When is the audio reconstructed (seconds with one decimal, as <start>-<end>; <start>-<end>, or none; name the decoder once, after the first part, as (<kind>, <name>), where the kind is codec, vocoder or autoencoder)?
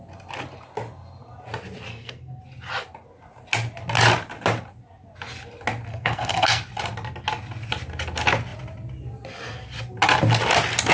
1.9-2.4 (codec, SNAC); 5.9-6.6